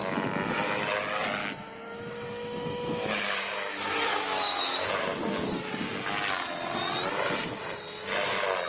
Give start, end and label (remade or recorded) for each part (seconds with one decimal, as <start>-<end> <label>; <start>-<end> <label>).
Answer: 0.0-1.4 recorded; 1.4-4.9 remade; 4.9-8.7 recorded